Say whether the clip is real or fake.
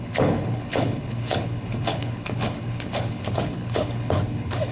fake